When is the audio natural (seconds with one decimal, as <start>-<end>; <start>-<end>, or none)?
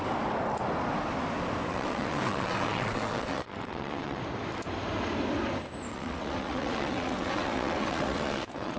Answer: 0.0-1.7; 4.2-5.9